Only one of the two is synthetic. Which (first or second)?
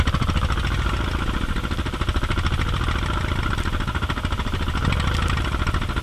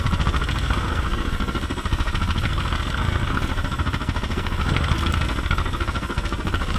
second